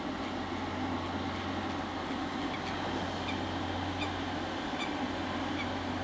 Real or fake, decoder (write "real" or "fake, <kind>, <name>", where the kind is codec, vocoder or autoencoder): real